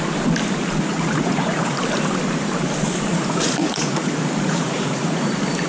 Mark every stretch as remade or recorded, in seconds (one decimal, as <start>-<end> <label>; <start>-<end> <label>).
0.0-0.9 recorded; 0.9-1.8 remade; 1.8-3.1 recorded; 3.1-5.3 remade; 5.3-5.7 recorded